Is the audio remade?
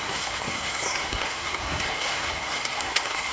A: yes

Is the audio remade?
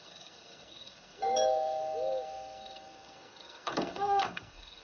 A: yes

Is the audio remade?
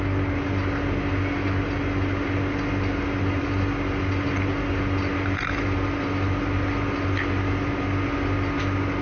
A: no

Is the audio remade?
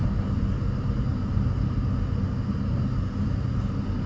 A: no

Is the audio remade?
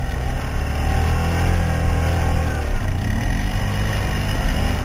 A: no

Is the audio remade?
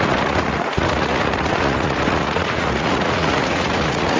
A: yes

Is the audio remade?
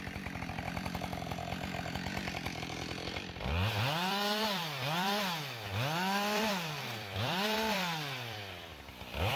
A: yes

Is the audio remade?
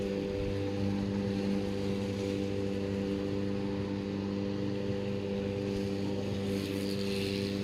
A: no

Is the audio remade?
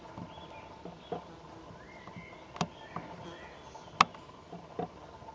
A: no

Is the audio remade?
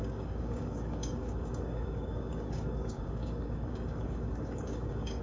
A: yes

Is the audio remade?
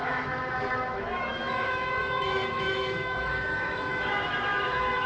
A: yes